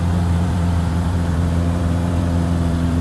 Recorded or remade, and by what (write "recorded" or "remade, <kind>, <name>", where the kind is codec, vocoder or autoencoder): remade, vocoder, BigVGAN v2